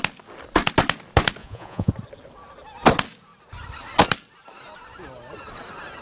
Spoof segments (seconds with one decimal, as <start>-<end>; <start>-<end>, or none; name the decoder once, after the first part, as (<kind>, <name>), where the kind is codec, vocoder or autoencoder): 1.4-1.9 (vocoder, Vocos)